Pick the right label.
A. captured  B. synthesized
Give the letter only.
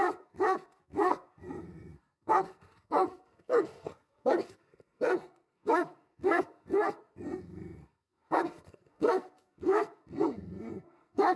B